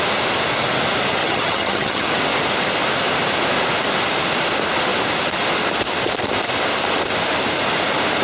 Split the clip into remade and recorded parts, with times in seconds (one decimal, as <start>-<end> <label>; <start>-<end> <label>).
0.0-1.2 recorded; 1.2-2.1 remade; 2.1-8.2 recorded